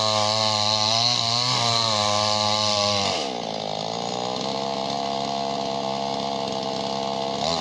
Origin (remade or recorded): recorded